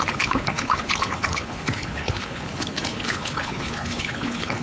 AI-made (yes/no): yes